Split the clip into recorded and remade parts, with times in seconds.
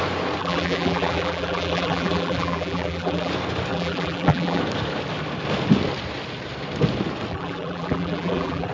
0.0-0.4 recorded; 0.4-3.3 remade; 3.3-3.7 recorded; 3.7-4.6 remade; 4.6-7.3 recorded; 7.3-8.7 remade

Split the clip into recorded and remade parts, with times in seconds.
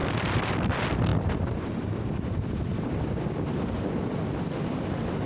0.0-0.5 remade; 0.5-1.1 recorded; 1.1-2.9 remade; 2.9-5.3 recorded